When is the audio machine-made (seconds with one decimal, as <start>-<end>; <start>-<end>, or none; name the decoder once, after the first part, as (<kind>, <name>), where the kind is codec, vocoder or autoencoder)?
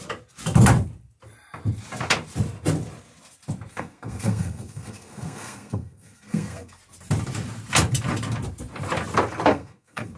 3.7-6.8 (codec, SNAC); 9.5-10.2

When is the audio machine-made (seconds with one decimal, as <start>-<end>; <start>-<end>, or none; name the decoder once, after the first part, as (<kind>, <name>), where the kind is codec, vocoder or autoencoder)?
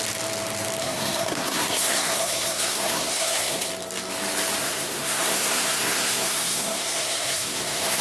0.8-3.7 (codec, SNAC); 4.6-8.0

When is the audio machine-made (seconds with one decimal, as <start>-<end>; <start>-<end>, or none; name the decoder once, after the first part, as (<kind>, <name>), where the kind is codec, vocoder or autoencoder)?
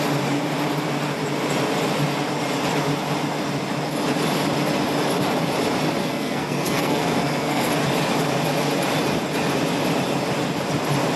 6.0-7.7 (codec, SNAC)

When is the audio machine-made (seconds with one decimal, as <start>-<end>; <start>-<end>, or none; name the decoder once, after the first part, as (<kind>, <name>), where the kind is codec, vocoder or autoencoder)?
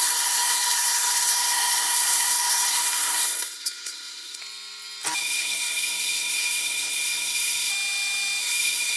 0.0-4.4 (codec, SNAC); 5.2-7.7; 8.4-9.0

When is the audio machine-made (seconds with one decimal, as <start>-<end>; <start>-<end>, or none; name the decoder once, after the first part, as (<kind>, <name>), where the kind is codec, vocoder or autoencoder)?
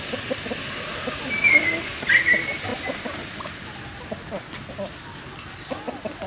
none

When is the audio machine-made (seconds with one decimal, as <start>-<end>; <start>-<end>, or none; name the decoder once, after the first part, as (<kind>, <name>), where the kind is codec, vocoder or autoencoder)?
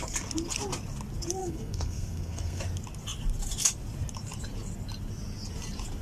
1.4-2.6 (codec, SNAC)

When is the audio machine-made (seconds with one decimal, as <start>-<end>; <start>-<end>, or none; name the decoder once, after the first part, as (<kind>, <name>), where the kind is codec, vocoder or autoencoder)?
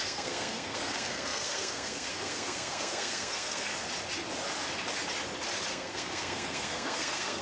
0.0-3.7 (codec, SNAC); 5.7-7.4